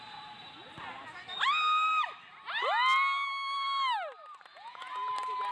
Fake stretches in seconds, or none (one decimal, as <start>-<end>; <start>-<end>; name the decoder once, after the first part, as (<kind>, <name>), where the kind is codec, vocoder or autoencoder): 4.5-5.1 (vocoder, Vocos)